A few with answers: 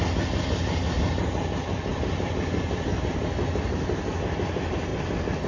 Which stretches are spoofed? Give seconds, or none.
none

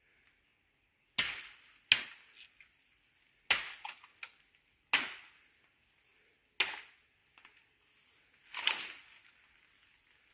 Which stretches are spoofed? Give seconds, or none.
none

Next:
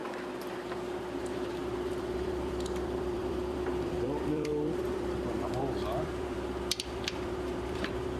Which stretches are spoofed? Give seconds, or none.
1.2-8.2 (vocoder, BigVGAN v2)

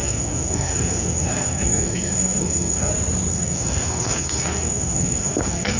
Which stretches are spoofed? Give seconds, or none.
0.0-2.9 (codec, SNAC); 3.3-5.8

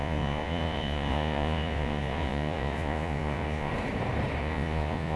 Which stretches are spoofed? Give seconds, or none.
0.0-3.7 (vocoder, Vocos); 4.4-5.2